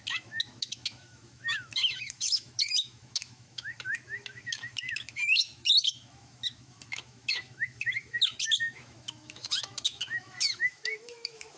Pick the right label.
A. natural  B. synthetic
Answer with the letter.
B